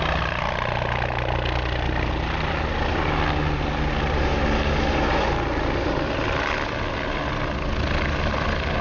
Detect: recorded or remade recorded